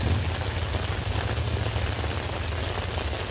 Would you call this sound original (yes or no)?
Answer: yes